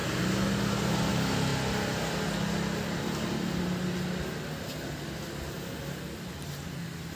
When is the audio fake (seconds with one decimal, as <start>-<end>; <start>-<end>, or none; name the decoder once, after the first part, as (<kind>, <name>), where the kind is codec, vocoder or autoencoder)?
none